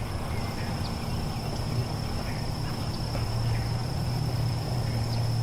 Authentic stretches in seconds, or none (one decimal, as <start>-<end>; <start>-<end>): 0.0-1.8; 2.7-3.8; 4.8-5.4